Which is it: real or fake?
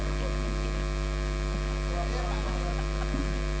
real